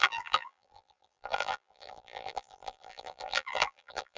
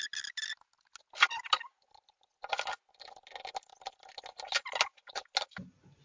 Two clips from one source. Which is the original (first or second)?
second